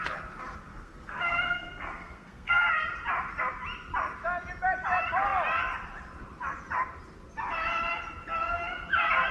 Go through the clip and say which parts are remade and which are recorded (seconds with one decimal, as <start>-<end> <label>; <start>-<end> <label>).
0.0-0.7 recorded; 0.7-2.6 remade; 2.6-9.3 recorded